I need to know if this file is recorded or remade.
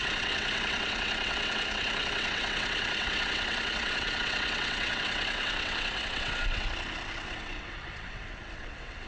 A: remade